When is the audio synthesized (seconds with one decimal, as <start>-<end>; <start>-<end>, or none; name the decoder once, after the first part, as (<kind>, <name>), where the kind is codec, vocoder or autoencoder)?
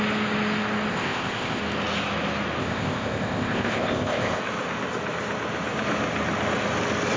0.9-1.6 (codec, ZipCodec); 2.6-4.4